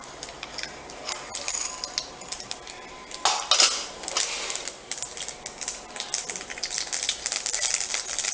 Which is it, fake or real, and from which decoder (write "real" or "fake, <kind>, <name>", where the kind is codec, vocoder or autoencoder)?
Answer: real